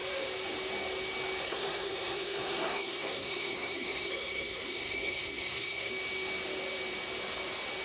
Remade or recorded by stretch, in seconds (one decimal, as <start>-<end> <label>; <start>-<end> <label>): 0.0-1.4 recorded; 1.4-5.9 remade; 5.9-7.8 recorded